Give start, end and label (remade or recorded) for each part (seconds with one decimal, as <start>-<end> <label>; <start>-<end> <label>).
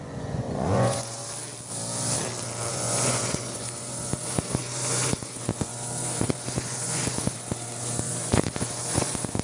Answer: 0.0-1.2 remade; 1.2-2.7 recorded; 2.7-9.4 remade